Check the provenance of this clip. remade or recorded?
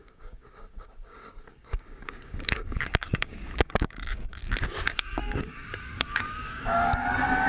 remade